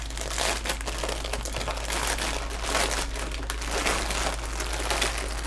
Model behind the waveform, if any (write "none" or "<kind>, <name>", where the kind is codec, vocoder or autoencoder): none